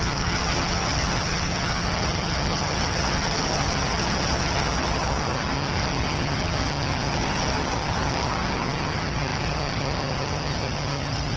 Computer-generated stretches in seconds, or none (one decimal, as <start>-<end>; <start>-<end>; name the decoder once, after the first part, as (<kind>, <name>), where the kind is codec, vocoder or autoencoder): 0.0-11.4 (vocoder, HiFi-GAN)

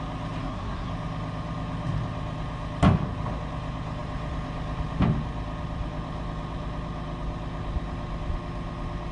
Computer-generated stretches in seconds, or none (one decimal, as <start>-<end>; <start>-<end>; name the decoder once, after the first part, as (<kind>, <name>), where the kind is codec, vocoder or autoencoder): 0.4-0.9 (codec, SNAC)

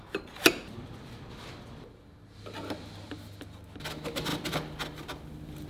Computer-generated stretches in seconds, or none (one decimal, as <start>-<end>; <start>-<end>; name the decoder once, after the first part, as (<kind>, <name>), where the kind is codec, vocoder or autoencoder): none

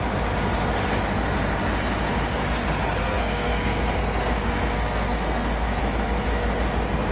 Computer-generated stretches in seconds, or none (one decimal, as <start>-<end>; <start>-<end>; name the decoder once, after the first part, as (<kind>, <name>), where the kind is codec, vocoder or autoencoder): 3.0-5.8 (codec, SNAC)

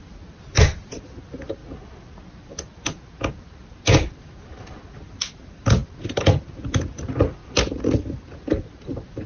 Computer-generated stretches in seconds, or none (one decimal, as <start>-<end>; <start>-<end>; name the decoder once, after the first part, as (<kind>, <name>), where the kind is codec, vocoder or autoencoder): none